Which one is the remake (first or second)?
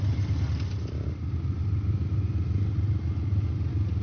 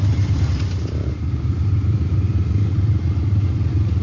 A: second